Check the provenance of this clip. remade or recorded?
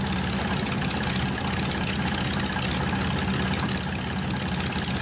recorded